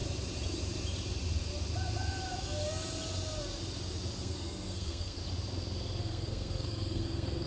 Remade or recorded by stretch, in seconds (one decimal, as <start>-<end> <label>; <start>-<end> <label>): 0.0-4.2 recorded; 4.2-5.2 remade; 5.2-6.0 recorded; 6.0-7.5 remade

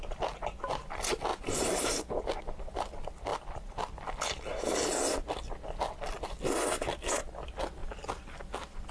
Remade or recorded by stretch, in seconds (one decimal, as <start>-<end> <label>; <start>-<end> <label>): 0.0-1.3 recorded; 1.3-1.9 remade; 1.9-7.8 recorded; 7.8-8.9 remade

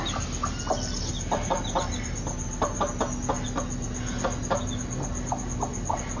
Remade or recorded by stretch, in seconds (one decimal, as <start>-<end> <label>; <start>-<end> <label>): 0.0-6.2 recorded

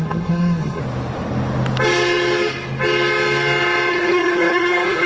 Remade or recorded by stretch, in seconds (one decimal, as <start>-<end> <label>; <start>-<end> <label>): 0.0-0.8 remade; 0.8-3.9 recorded; 3.9-5.1 remade

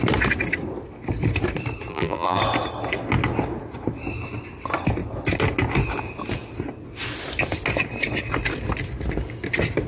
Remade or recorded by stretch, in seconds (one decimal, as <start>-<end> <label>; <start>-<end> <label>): 0.0-1.9 recorded; 1.9-2.4 remade; 2.4-9.9 recorded

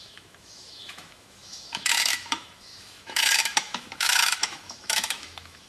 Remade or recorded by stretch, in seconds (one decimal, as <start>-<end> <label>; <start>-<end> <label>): 0.0-5.7 remade